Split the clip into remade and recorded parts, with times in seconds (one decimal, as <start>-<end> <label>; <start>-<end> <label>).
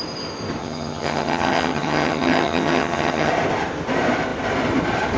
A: 0.0-0.6 recorded; 0.6-3.3 remade; 3.3-5.2 recorded